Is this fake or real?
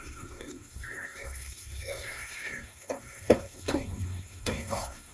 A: fake